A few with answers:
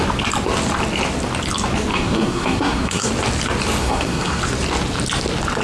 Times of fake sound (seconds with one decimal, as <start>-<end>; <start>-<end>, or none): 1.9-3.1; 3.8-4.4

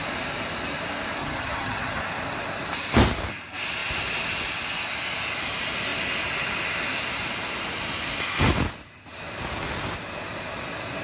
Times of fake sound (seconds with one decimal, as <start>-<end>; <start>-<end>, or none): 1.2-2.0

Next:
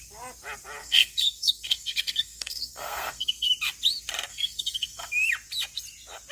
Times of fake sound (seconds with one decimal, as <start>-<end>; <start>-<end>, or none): 0.8-3.5; 4.3-5.1

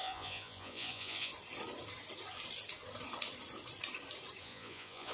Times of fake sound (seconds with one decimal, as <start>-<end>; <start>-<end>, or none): 0.0-1.3; 4.4-5.1